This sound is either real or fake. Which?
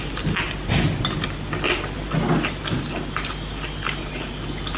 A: real